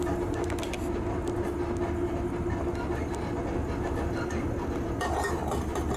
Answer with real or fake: real